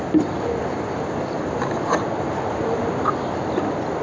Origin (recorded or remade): recorded